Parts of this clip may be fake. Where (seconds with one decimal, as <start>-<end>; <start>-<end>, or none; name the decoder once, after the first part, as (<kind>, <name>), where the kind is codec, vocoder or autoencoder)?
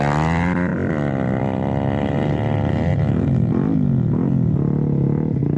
none